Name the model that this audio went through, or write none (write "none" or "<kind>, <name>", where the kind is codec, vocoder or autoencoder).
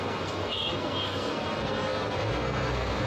codec, SNAC